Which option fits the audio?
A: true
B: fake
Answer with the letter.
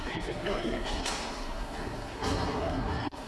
B